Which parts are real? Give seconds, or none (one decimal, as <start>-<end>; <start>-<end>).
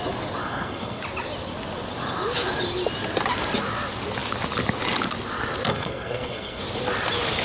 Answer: 0.0-0.4; 1.0-5.7; 6.6-7.4